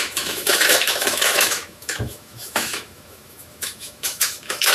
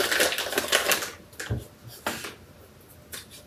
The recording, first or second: second